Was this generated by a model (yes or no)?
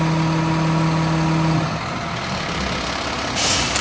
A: no